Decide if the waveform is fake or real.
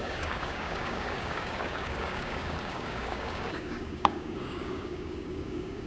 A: fake